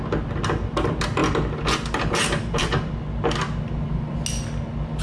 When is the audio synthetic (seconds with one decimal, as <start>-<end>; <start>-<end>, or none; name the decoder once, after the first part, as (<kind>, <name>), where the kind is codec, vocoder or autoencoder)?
none